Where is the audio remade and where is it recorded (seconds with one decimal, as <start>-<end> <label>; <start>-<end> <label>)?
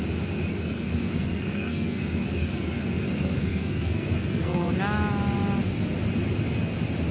0.0-0.5 recorded; 0.5-4.7 remade; 4.7-7.1 recorded